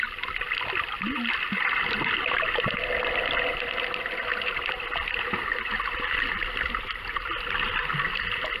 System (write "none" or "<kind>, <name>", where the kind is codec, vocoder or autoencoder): none